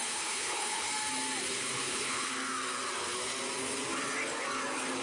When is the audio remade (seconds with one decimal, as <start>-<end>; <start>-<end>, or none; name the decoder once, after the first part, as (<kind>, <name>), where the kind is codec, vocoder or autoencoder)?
0.0-0.9 (codec, HILCodec); 1.5-2.3